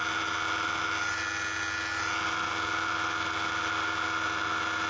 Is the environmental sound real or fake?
real